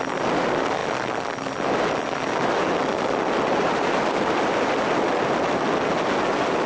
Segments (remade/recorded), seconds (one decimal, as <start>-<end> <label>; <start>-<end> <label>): 0.0-6.7 recorded